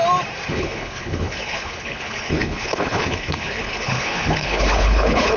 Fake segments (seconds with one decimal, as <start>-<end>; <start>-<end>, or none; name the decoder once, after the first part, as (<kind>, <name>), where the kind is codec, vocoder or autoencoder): 0.5-5.4 (codec, HILCodec)